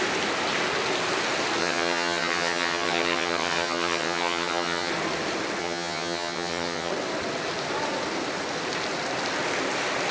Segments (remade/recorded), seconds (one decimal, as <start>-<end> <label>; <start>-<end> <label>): 0.0-1.6 recorded; 1.6-4.9 remade; 4.9-5.6 recorded; 5.6-6.9 remade; 6.9-10.1 recorded